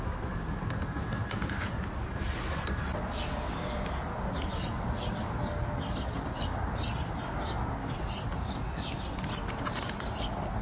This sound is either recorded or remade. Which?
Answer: recorded